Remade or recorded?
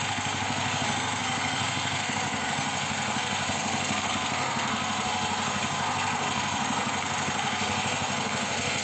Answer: remade